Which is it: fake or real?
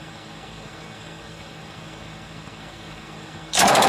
fake